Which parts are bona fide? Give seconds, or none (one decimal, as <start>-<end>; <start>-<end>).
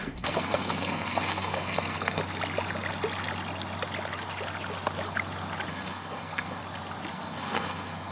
2.2-5.7; 6.6-7.1